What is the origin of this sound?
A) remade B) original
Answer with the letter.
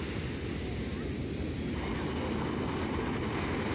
B